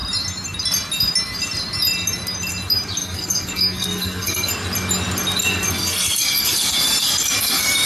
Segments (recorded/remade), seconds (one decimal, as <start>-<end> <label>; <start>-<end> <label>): 0.0-3.0 recorded; 3.0-4.5 remade; 4.5-5.4 recorded; 5.4-7.9 remade